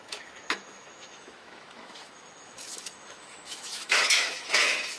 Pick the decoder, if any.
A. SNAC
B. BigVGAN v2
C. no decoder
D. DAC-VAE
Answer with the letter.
D